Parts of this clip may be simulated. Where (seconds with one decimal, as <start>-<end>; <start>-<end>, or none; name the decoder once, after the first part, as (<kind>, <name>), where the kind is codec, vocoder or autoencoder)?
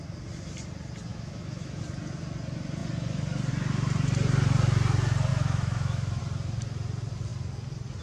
1.1-1.8 (autoencoder, DAC-VAE); 5.3-6.2